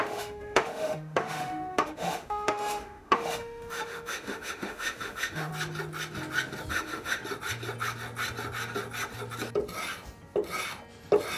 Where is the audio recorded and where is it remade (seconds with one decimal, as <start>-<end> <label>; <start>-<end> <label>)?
0.0-5.5 remade; 5.5-6.7 recorded; 6.7-7.2 remade; 7.2-11.4 recorded